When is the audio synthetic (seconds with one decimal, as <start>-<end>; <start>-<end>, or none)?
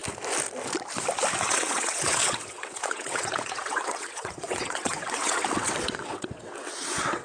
1.4-7.2